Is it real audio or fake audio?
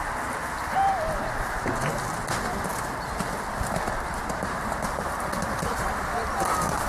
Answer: real